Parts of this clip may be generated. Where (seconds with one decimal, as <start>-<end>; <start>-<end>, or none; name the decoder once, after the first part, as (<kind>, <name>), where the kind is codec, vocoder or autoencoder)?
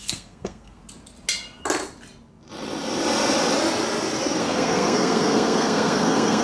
0.0-0.8 (codec, SNAC); 4.4-6.4